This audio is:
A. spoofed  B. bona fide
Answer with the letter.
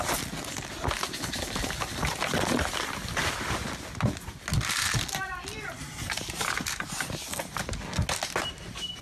B